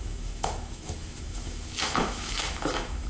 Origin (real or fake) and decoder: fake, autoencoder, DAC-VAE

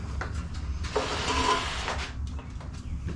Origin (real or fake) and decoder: real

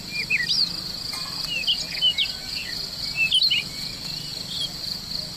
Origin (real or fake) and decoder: real